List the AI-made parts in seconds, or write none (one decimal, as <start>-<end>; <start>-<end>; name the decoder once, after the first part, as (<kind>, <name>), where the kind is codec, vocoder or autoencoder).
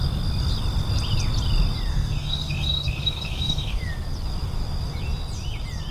1.9-3.8 (codec, SNAC)